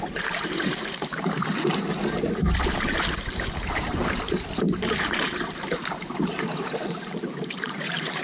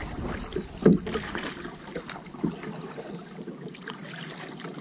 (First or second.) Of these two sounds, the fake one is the first